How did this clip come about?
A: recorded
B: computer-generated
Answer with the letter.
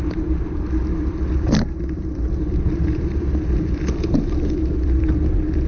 B